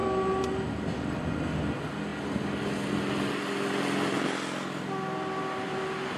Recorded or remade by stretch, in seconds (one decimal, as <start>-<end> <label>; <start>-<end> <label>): 0.0-6.2 recorded